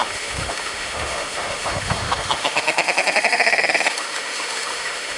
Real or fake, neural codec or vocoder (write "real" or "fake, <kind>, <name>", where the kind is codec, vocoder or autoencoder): fake, autoencoder, DAC-VAE